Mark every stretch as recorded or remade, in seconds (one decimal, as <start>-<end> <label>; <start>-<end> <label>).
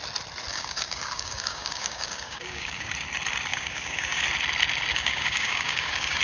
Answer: 0.0-0.5 recorded; 0.5-2.9 remade; 2.9-3.5 recorded; 3.5-4.2 remade; 4.2-4.9 recorded; 4.9-6.2 remade